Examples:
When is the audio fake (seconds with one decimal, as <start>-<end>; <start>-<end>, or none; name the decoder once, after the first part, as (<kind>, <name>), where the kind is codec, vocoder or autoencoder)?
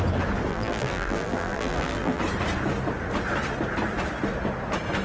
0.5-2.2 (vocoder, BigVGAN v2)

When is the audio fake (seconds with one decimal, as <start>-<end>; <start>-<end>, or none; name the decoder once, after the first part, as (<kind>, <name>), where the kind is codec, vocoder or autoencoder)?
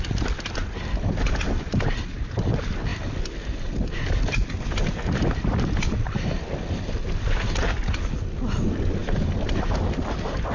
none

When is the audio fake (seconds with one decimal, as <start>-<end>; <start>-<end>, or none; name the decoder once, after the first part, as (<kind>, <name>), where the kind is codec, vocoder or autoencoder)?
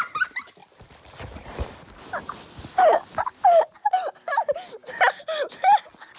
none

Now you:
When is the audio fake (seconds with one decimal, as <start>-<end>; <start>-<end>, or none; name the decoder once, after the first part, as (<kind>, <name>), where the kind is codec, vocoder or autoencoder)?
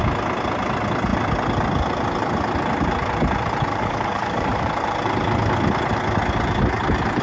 3.7-4.7 (codec, DAC)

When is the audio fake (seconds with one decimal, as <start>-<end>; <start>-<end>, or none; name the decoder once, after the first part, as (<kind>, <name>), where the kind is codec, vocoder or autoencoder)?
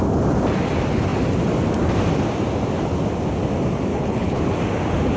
3.9-4.4 (codec, HILCodec)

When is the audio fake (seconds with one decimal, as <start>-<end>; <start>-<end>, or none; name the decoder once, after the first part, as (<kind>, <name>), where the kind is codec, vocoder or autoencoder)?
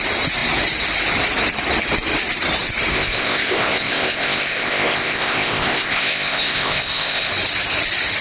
2.9-7.3 (codec, ZipCodec)